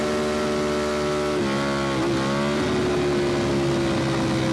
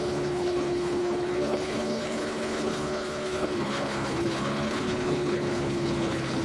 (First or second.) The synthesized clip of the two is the second